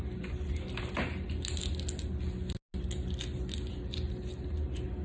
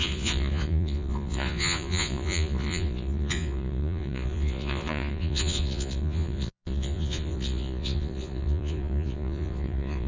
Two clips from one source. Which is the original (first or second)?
first